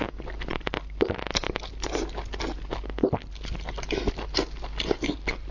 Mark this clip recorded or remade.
recorded